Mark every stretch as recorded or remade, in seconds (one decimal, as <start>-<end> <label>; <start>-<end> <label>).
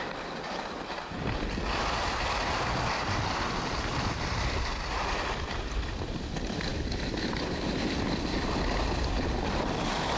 0.0-10.2 recorded